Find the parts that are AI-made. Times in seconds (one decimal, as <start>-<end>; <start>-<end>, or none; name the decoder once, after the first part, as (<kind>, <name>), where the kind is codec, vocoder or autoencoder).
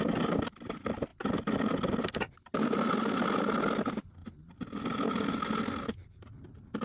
none